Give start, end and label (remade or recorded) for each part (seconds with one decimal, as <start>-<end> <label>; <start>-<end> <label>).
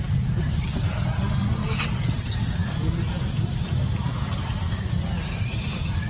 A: 0.0-6.1 recorded